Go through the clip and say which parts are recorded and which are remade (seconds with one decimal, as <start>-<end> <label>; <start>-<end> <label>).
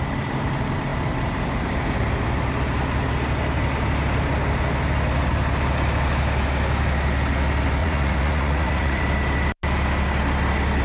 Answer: 0.0-7.8 recorded; 7.8-9.0 remade; 9.0-10.8 recorded